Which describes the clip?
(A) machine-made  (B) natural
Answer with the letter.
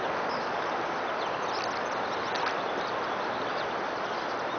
B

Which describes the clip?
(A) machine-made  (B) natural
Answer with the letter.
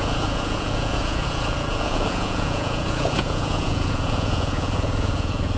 A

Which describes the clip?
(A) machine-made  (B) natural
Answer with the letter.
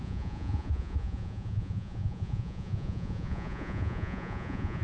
A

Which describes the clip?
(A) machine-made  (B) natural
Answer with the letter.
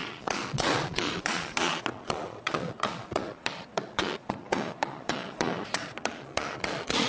A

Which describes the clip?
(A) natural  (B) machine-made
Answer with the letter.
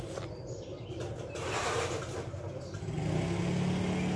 A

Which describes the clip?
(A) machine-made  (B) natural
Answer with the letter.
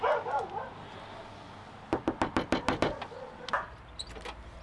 B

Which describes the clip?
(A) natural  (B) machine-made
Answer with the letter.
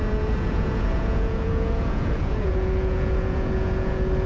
B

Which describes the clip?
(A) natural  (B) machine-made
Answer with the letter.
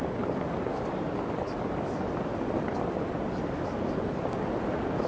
A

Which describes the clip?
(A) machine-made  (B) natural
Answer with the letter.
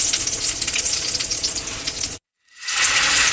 A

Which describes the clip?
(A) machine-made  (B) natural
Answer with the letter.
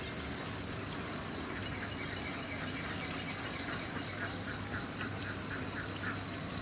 B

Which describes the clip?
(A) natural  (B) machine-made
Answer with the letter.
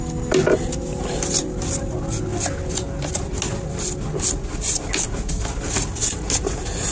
A